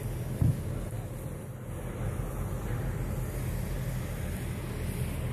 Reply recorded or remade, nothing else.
recorded